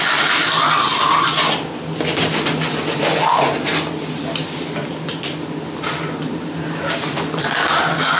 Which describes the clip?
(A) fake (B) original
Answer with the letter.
B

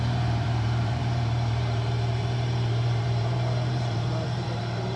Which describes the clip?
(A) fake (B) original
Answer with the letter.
A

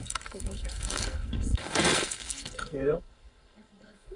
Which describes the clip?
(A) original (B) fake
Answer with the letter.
B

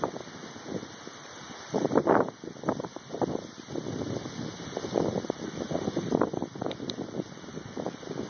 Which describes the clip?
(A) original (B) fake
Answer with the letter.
A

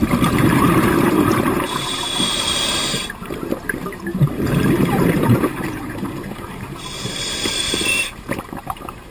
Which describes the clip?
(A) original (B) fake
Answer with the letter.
B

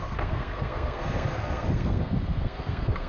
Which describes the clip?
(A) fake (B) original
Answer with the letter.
A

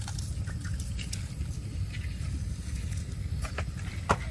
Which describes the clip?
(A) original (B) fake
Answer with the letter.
A